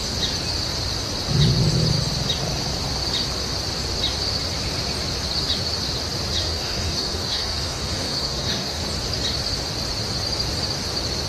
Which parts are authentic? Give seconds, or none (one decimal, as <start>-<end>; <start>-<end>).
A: 0.0-6.4; 8.8-11.3